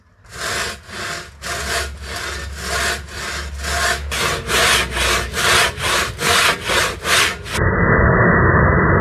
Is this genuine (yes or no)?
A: yes